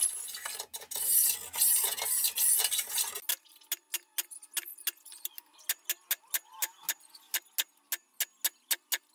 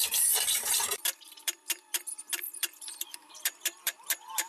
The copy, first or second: second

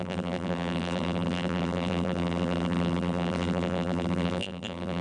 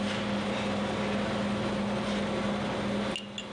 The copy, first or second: first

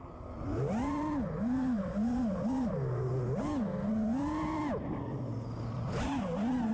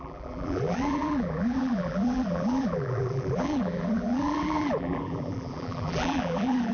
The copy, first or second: second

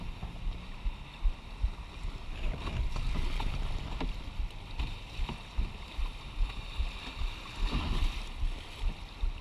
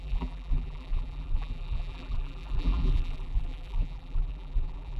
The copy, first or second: second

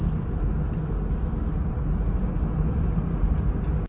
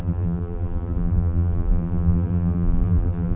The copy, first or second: second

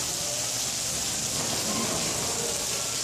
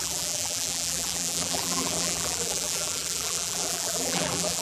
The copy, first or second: second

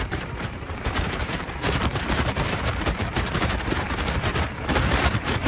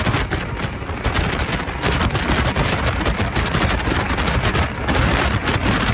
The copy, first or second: first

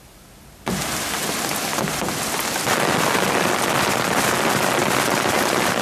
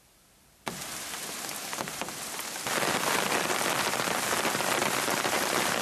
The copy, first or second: second